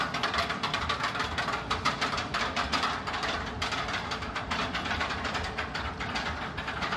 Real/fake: fake